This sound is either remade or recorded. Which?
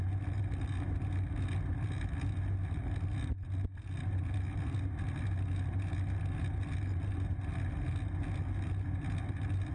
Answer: recorded